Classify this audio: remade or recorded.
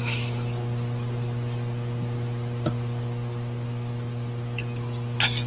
recorded